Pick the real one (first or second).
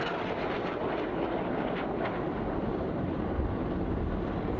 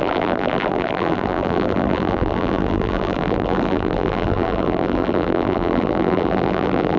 first